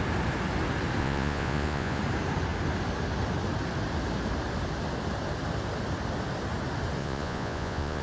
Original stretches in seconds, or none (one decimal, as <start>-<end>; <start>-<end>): 0.0-1.0; 2.0-7.0